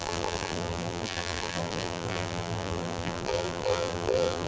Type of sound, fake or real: fake